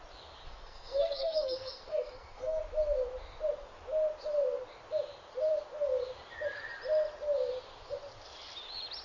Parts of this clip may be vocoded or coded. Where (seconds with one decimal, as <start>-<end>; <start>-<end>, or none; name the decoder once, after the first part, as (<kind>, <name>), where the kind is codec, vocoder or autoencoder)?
0.4-2.6 (codec, SNAC)